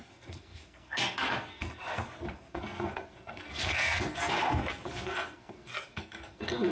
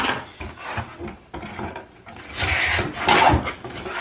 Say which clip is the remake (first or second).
first